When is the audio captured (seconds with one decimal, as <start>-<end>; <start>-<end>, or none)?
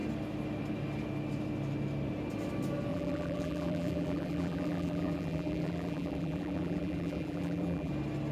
0.0-2.9; 7.9-8.3